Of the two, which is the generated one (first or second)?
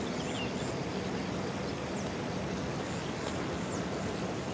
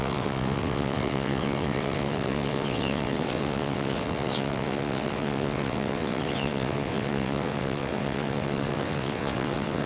second